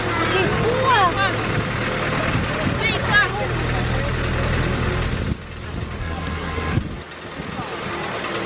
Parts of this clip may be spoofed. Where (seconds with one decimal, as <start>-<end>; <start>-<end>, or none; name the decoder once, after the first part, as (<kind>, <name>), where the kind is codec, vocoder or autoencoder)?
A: 6.0-6.8 (codec, SNAC)